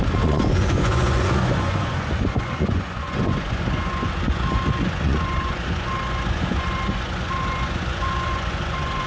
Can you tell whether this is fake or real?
fake